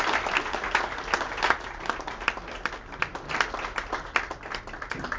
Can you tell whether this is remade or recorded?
recorded